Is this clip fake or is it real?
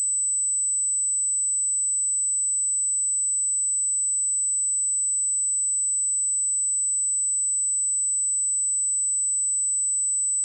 fake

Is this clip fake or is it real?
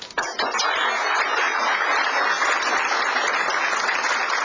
real